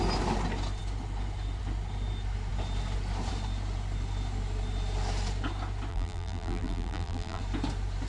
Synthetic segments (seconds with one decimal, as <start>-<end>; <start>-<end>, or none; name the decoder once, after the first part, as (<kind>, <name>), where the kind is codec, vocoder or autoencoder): 5.9-7.4 (vocoder, BigVGAN v2)